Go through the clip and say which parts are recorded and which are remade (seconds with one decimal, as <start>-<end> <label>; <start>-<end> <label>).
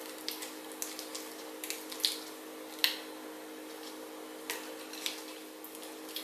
0.0-6.2 recorded